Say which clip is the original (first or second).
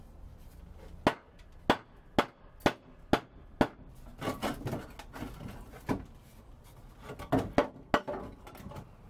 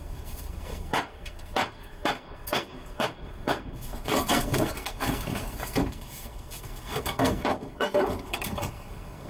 first